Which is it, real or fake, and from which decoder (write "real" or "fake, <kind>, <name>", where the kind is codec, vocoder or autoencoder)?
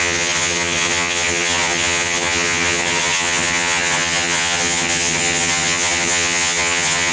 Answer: fake, vocoder, HiFi-GAN